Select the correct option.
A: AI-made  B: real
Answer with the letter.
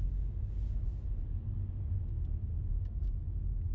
B